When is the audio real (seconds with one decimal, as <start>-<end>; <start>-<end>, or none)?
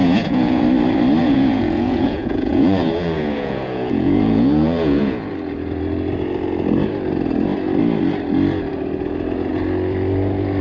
0.6-1.2; 5.3-10.6